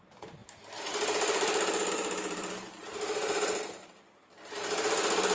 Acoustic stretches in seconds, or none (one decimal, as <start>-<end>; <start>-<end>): none